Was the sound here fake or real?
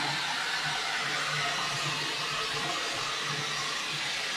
real